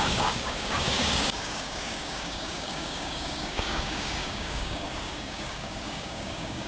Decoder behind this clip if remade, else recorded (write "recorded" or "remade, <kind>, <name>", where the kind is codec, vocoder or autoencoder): remade, codec, DAC